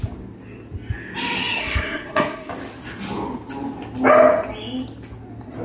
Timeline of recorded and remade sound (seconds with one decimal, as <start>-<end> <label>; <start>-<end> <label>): 0.0-1.6 recorded; 1.6-2.5 remade; 2.5-5.6 recorded

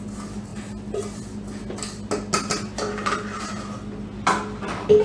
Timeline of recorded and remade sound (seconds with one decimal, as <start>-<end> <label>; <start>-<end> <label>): 0.0-5.0 recorded

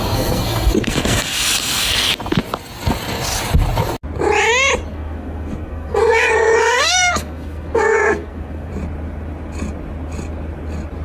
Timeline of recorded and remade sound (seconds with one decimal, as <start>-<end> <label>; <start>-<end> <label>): 0.0-2.1 remade; 2.1-4.9 recorded; 4.9-8.7 remade; 8.7-11.0 recorded